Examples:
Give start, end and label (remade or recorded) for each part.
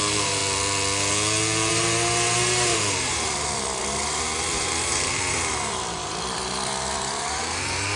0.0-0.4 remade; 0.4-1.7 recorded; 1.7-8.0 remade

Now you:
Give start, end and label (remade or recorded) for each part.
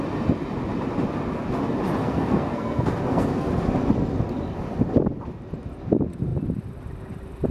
0.0-2.0 recorded; 2.0-3.5 remade; 3.5-7.5 recorded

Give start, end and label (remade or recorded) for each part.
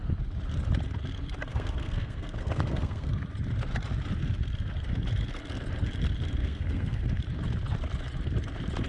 0.0-1.5 recorded; 1.5-3.2 remade; 3.2-6.4 recorded; 6.4-7.2 remade; 7.2-8.9 recorded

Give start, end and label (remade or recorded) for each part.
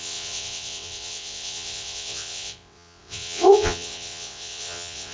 0.0-5.1 remade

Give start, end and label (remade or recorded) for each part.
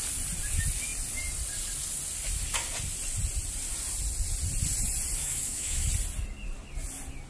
0.0-5.2 recorded; 5.2-5.9 remade; 5.9-7.3 recorded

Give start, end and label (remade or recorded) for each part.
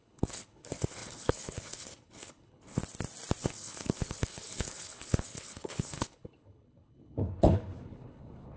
0.0-2.8 remade; 2.8-3.4 recorded; 3.4-8.6 remade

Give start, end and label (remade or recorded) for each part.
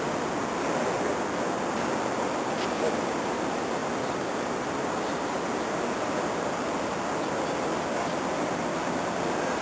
0.0-9.6 recorded